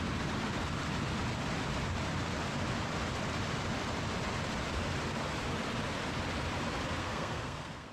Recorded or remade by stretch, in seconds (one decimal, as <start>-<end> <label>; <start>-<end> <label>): 0.0-7.0 recorded; 7.0-7.9 remade